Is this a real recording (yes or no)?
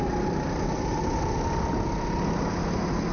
yes